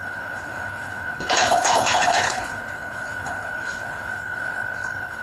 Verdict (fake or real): fake